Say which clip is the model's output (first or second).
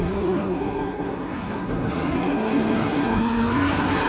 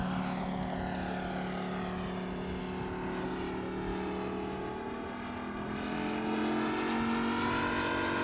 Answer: first